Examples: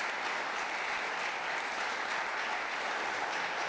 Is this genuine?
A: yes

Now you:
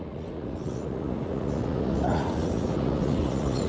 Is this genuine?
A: no